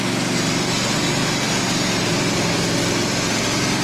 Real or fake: real